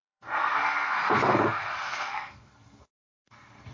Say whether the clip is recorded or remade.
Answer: remade